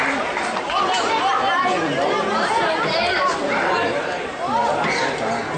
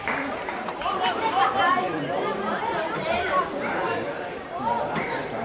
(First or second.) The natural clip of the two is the first